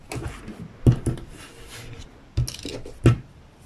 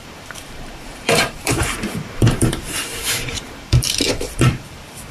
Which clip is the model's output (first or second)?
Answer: second